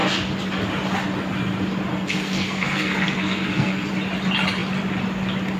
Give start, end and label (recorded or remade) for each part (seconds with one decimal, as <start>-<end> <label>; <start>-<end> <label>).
0.0-1.9 recorded; 1.9-3.9 remade; 3.9-5.6 recorded